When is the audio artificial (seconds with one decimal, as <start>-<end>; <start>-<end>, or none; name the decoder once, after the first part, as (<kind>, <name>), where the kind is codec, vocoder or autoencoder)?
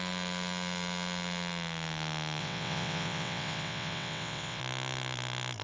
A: 2.4-4.6 (vocoder, WaveNeXt)